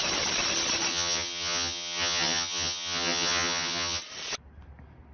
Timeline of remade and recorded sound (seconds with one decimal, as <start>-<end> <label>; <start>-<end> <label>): 0.0-0.9 recorded; 0.9-4.0 remade; 4.0-5.1 recorded